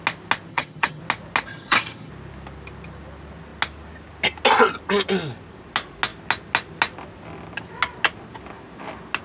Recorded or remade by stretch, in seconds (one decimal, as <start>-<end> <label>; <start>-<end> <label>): 0.0-0.5 recorded; 0.5-1.0 remade; 1.0-1.5 recorded; 1.5-2.1 remade; 2.1-9.2 recorded